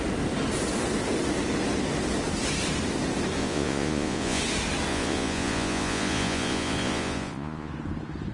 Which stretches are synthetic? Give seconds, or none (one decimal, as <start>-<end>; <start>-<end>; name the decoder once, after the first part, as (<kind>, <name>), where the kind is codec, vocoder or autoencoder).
3.4-4.4 (vocoder, Vocos); 4.9-7.7